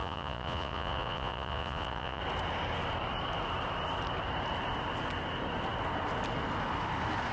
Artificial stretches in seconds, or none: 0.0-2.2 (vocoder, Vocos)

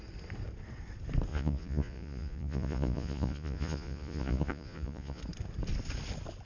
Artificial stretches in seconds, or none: 1.3-5.2 (vocoder, Vocos)

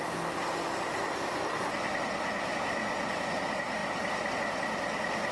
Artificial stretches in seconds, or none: 1.3-1.9 (vocoder, Vocos); 2.8-3.4

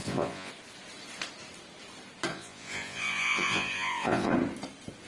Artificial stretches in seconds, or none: 0.0-0.5 (vocoder, Vocos); 2.3-4.3

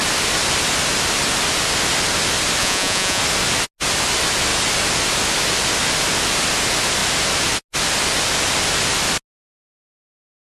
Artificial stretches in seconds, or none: 2.6-3.2 (vocoder, Vocos)

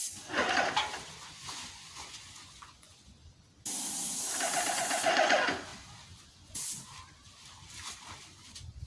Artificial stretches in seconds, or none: 0.0-0.4 (vocoder, Vocos); 1.2-3.2; 4.7-5.7; 6.2-6.9; 8.3-8.9